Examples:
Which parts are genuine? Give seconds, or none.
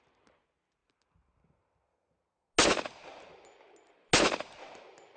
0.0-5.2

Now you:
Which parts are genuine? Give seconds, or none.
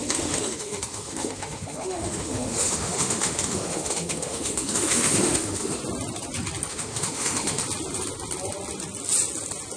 5.8-6.7; 7.6-9.8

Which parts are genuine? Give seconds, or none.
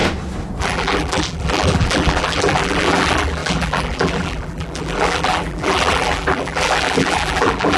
0.0-0.6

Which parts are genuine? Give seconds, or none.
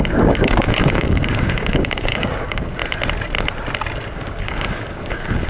2.8-4.1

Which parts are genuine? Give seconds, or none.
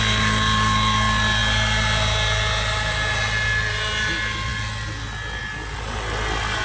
0.0-6.6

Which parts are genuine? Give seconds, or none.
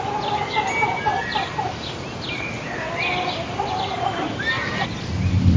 0.0-5.6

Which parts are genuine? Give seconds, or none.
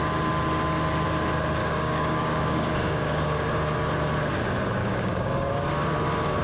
0.0-1.6; 3.5-4.8; 5.5-6.4